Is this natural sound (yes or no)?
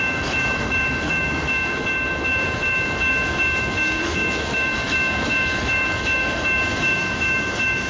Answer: no